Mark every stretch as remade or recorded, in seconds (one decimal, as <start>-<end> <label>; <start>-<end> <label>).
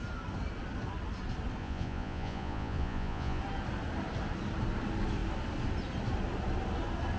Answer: 0.0-1.6 recorded; 1.6-3.4 remade; 3.4-7.2 recorded